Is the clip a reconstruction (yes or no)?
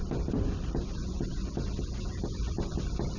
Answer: no